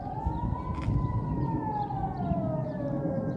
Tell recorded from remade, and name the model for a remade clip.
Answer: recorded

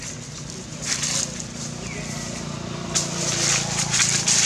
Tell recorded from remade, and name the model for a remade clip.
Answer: recorded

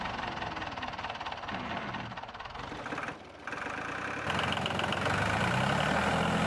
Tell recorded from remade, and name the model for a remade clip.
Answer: recorded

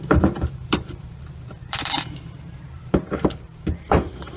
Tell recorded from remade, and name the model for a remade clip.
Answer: remade, vocoder, BigVGAN v2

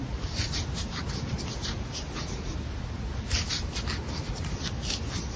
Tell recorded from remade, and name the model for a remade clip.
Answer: recorded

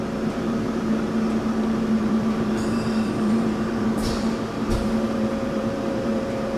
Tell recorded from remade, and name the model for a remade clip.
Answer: remade, vocoder, BigVGAN v2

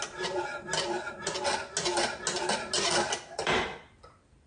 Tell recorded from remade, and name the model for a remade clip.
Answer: recorded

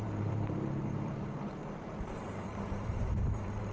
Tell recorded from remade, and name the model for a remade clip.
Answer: remade, vocoder, BigVGAN v2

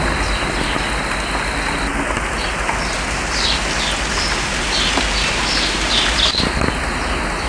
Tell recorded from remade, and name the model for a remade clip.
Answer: recorded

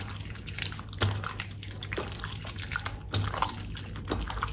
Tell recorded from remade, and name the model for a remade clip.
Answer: recorded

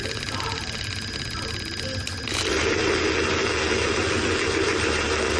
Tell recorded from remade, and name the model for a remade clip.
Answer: recorded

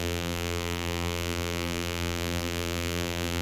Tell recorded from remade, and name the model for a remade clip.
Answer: remade, vocoder, BigVGAN v2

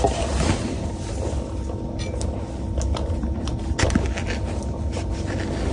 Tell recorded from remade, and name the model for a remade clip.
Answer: recorded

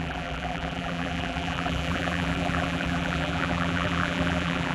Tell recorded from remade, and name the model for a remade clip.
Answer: remade, vocoder, BigVGAN v2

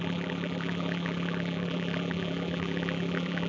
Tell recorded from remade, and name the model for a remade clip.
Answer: remade, vocoder, BigVGAN v2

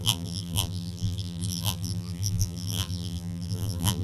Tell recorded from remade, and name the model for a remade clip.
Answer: remade, vocoder, BigVGAN v2